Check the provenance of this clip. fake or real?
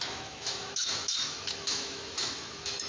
fake